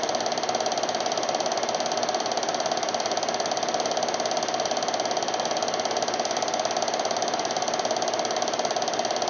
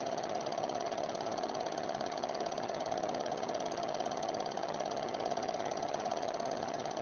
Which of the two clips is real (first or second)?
first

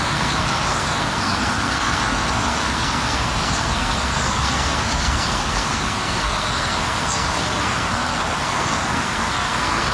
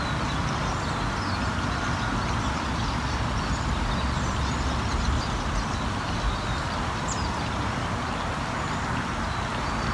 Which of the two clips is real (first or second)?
second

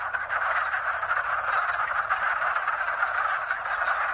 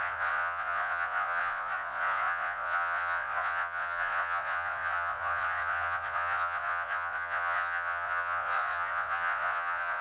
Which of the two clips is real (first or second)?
first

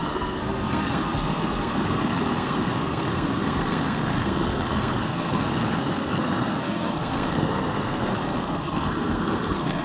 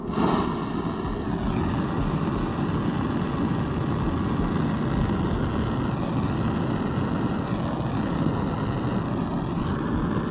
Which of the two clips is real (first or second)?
second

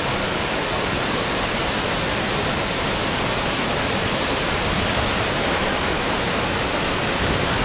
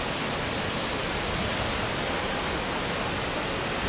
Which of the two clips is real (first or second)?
second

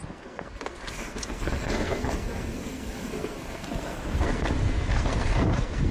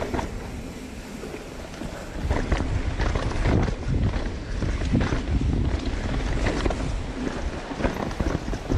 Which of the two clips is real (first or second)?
second